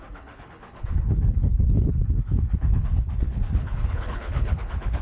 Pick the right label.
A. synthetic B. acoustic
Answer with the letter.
A